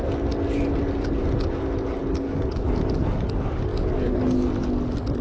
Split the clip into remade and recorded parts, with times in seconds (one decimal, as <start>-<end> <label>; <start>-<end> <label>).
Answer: 0.0-5.2 recorded